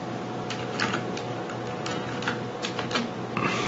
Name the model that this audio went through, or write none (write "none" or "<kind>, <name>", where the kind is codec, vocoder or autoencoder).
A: none